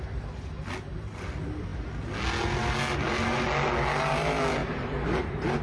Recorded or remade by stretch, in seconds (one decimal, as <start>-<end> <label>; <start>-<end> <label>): 0.0-4.6 recorded; 4.6-5.6 remade